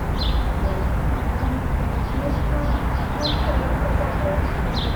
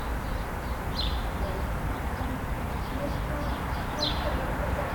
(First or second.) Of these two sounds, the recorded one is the first